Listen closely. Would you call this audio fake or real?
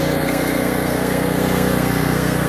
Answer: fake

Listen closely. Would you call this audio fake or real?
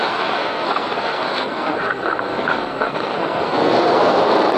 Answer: fake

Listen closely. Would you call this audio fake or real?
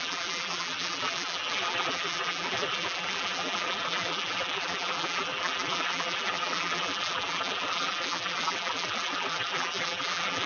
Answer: fake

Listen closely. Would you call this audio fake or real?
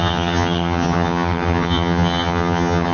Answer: fake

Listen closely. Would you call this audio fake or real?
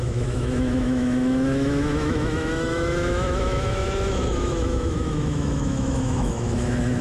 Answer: fake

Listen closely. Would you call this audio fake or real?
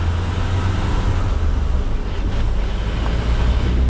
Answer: real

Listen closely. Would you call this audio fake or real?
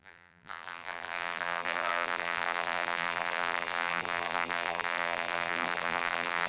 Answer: fake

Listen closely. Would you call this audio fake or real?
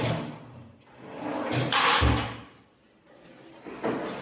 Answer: real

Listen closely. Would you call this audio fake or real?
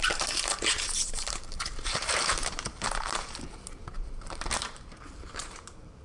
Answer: fake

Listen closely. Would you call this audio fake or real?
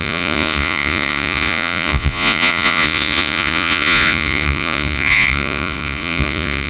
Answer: fake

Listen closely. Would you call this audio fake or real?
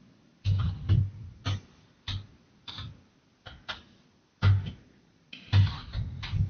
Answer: real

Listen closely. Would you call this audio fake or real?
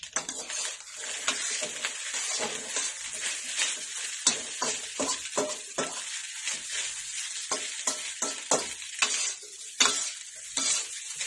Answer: real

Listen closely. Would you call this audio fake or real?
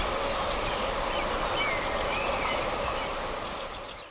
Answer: real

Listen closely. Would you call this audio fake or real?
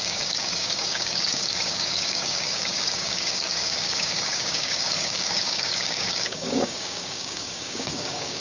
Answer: fake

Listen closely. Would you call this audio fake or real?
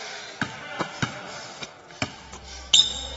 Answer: real